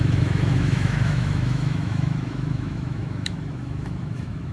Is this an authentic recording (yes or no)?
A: no